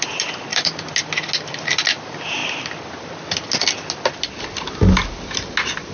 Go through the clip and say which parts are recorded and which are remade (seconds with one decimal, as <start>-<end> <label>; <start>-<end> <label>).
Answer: 0.0-5.9 recorded